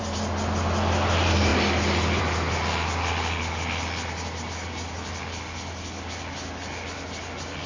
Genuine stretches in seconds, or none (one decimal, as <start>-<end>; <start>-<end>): 0.0-7.7